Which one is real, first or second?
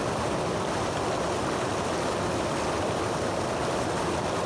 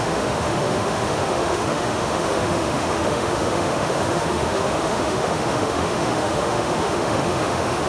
first